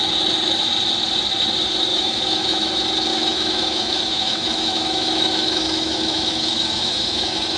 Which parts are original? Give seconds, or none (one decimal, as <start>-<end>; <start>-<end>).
0.0-1.9; 2.7-3.1